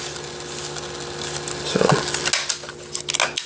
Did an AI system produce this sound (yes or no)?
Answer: no